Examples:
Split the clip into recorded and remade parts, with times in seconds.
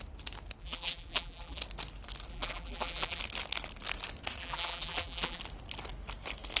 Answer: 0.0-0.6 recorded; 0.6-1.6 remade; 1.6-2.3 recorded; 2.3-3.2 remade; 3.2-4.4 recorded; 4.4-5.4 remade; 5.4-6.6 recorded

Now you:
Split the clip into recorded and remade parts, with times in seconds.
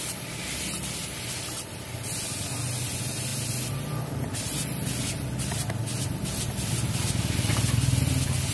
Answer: 0.0-8.5 recorded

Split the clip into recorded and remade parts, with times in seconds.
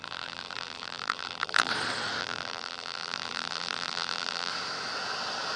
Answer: 0.0-1.7 remade; 1.7-2.2 recorded; 2.2-4.5 remade; 4.5-5.6 recorded